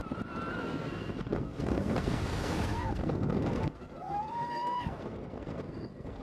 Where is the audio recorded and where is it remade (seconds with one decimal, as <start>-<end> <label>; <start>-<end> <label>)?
0.0-0.6 recorded; 0.6-6.2 remade